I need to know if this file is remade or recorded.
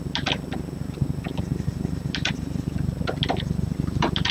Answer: recorded